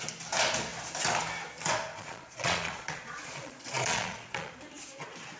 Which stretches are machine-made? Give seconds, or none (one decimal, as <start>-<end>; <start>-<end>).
1.9-4.5